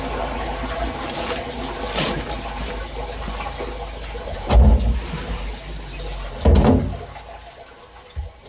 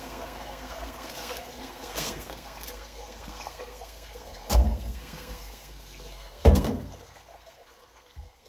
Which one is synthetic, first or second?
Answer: second